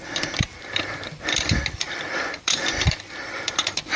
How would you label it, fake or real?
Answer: fake